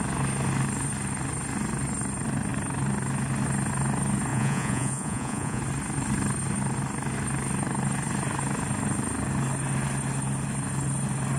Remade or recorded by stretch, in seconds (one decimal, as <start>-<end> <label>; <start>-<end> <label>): 0.0-4.3 recorded; 4.3-5.6 remade; 5.6-11.4 recorded

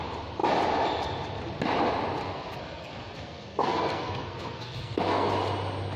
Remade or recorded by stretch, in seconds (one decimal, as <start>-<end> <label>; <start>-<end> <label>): 0.0-2.2 recorded; 2.2-5.3 remade; 5.3-6.0 recorded

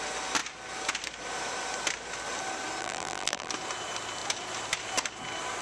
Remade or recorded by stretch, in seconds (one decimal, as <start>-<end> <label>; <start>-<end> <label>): 0.0-2.8 recorded; 2.8-3.5 remade; 3.5-5.6 recorded

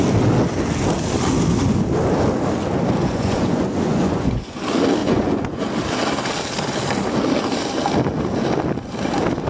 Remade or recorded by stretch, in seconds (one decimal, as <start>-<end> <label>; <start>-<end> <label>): 0.0-3.0 recorded; 3.0-4.6 remade; 4.6-5.0 recorded; 5.0-5.6 remade; 5.6-9.5 recorded

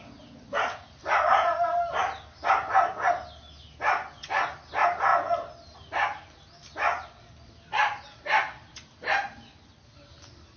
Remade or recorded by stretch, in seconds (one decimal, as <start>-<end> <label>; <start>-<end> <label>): 0.0-10.6 recorded

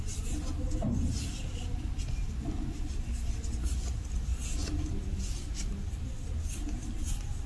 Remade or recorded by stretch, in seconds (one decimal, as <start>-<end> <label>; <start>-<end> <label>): 0.0-7.5 recorded

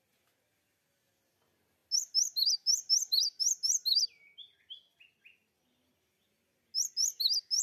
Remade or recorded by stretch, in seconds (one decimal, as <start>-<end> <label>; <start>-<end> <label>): 0.0-7.6 recorded

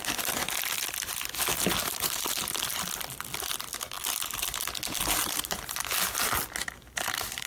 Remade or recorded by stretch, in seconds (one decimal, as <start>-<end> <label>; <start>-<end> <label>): 0.0-0.4 remade; 0.4-1.8 recorded; 1.8-2.5 remade; 2.5-6.9 recorded; 6.9-7.5 remade